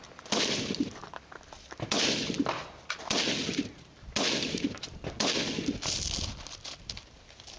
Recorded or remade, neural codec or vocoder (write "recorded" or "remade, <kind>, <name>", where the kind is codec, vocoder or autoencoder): recorded